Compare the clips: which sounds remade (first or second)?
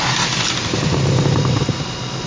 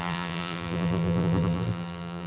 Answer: second